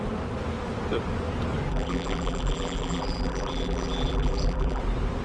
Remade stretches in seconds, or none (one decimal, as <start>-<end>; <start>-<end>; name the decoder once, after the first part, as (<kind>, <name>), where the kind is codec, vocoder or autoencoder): 1.7-4.8 (vocoder, BigVGAN v2)